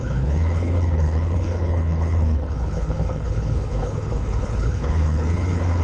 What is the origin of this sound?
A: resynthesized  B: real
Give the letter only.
A